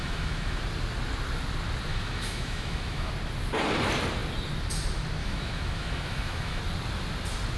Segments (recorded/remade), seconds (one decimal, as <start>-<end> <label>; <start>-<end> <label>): 0.0-0.6 remade; 0.6-1.9 recorded; 1.9-3.1 remade; 3.1-5.2 recorded; 5.2-6.6 remade; 6.6-7.6 recorded